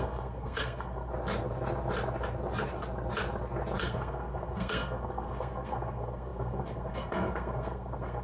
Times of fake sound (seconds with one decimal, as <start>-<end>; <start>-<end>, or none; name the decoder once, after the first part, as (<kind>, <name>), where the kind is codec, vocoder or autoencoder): 0.0-1.1 (codec, SNAC); 3.8-8.2